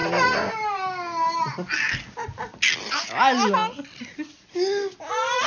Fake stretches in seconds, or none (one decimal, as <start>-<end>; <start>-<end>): none